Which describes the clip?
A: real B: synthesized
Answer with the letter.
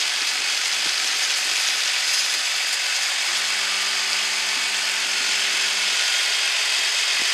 A